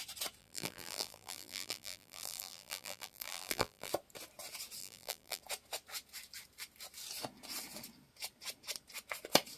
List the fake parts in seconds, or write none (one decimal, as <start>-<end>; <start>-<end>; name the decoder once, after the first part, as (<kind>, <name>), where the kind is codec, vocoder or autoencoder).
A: 0.4-3.9 (vocoder, BigVGAN v2); 4.8-5.4